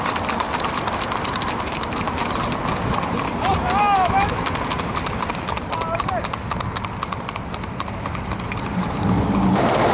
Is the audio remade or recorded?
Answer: recorded